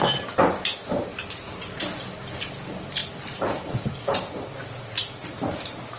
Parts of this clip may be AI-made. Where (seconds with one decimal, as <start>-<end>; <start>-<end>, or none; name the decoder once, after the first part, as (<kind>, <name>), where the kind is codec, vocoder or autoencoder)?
5.2-6.0 (vocoder, BigVGAN v2)